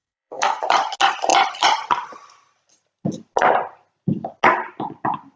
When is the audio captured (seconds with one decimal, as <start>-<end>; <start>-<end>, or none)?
0.6-5.4